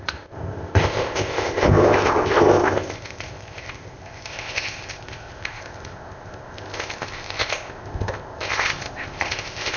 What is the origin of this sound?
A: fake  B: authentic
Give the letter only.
A